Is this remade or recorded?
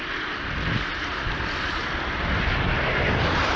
remade